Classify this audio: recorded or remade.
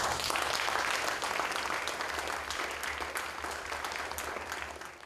recorded